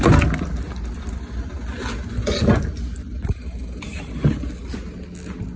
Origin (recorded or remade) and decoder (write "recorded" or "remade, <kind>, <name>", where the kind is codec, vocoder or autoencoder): recorded